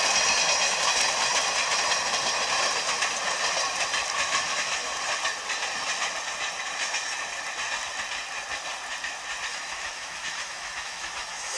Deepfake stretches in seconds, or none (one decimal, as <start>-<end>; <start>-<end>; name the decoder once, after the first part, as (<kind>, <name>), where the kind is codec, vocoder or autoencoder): 4.3-4.9 (autoencoder, DAC-VAE); 9.5-11.6